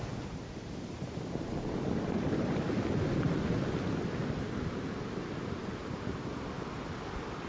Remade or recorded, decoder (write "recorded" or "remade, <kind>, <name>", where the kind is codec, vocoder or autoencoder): recorded